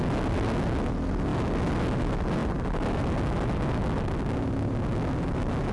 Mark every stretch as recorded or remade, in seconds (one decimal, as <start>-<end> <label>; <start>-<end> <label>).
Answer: 0.0-5.7 recorded